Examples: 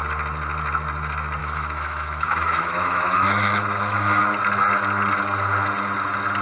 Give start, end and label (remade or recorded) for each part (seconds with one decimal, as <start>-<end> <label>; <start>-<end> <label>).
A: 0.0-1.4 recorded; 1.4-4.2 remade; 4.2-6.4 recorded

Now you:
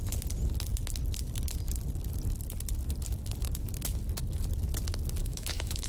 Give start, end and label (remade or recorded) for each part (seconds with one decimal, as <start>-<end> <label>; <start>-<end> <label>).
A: 0.0-5.2 recorded; 5.2-5.9 remade

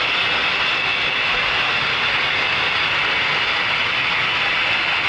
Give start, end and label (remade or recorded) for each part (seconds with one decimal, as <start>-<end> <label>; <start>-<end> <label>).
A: 0.0-5.1 recorded

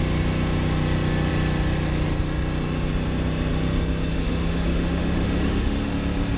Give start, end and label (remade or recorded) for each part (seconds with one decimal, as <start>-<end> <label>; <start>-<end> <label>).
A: 0.0-4.1 recorded; 4.1-5.9 remade; 5.9-6.4 recorded

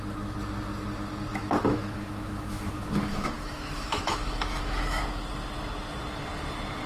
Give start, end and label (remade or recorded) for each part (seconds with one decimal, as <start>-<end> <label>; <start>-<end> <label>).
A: 0.0-1.3 recorded; 1.3-5.0 remade; 5.0-6.9 recorded